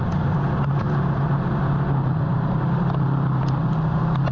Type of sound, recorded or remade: recorded